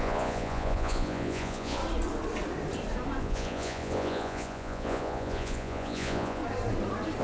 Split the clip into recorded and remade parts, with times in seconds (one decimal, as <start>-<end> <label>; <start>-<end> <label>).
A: 0.0-1.8 remade; 1.8-3.2 recorded; 3.2-6.4 remade; 6.4-7.2 recorded